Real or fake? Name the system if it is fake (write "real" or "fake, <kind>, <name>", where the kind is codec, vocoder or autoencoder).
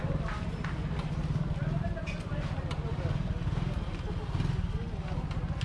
real